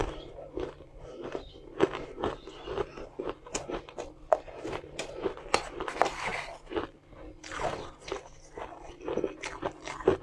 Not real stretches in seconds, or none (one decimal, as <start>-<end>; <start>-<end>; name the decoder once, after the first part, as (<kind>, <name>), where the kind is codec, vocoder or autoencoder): none

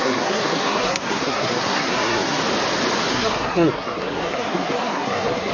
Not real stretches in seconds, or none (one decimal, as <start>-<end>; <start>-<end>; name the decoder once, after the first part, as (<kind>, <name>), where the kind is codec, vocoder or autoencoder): 0.0-2.4 (codec, SNAC); 3.1-5.5

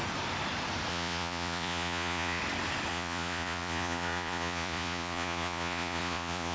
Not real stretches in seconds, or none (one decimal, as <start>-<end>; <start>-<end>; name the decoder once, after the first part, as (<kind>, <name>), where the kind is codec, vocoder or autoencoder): 0.9-2.4 (vocoder, Vocos); 2.9-6.5

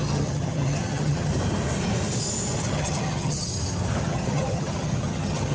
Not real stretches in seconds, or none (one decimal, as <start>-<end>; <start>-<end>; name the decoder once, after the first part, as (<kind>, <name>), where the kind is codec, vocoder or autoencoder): 0.0-1.3 (vocoder, HiFi-GAN); 2.6-3.5; 4.0-5.5